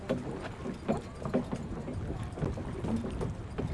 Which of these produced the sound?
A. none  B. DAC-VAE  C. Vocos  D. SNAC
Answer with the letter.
A